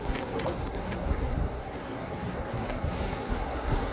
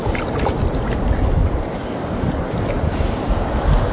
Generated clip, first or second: first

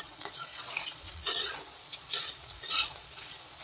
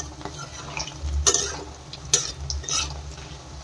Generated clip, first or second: first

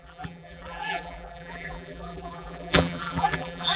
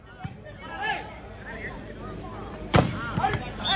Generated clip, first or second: first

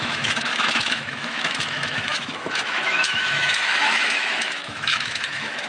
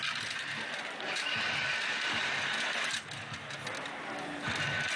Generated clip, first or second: first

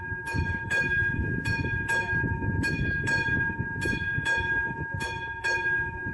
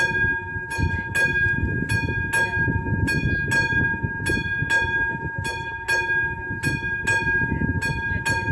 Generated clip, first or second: first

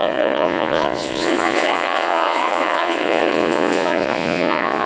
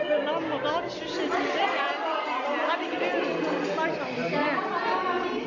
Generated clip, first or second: first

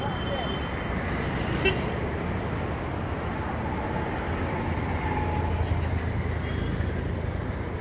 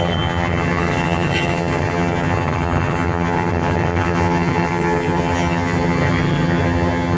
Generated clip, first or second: second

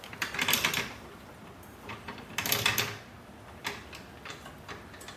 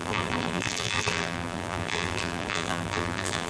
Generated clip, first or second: second